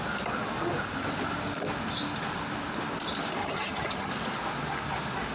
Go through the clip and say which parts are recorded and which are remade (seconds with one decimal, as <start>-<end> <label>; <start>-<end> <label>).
0.0-3.4 recorded; 3.4-4.1 remade; 4.1-5.3 recorded

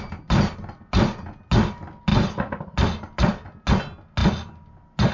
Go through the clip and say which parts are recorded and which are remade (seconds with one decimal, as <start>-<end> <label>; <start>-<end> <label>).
0.0-5.1 recorded

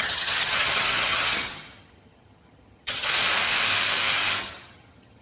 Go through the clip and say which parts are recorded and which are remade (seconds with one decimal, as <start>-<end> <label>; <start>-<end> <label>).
0.0-3.1 remade; 3.1-4.4 recorded; 4.4-5.2 remade